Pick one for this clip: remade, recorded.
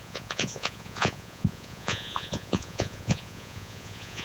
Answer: remade